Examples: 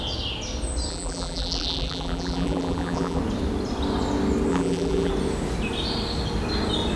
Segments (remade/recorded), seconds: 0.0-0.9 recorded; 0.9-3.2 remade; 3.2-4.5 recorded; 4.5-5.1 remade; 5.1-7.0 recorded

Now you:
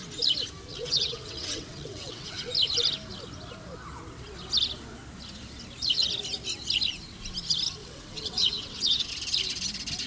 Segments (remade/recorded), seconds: 0.0-0.7 recorded; 0.7-2.5 remade; 2.5-7.8 recorded; 7.8-9.1 remade; 9.1-10.1 recorded

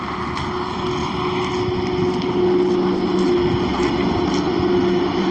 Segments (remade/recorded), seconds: 0.0-5.3 recorded

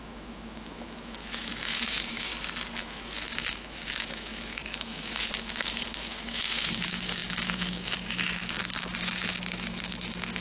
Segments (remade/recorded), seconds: 0.0-2.3 remade; 2.3-2.8 recorded; 2.8-10.4 remade

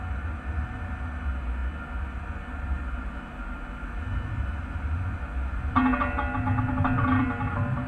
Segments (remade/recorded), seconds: 0.0-7.9 recorded